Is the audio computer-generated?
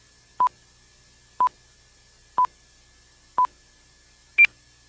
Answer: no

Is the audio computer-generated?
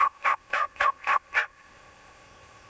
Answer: yes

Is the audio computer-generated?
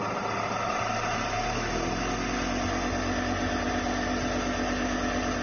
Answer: no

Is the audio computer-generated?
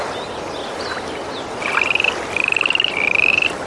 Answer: no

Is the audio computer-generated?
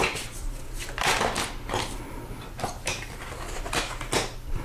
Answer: no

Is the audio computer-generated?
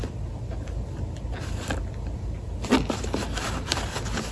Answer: no